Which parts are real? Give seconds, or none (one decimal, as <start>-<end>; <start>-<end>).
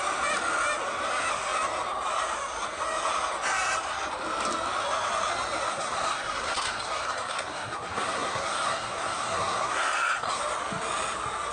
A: 0.0-5.7; 10.4-11.5